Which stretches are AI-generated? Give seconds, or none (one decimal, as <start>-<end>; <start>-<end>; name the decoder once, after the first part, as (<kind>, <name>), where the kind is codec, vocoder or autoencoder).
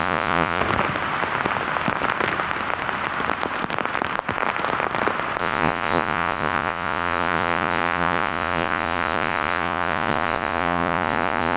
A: 0.0-0.6 (vocoder, Vocos); 5.4-11.6